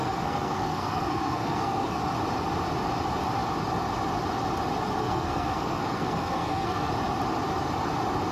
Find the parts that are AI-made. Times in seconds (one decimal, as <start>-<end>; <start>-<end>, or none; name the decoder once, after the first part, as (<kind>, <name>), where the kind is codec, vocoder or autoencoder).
0.0-2.0 (codec, SNAC); 5.0-6.9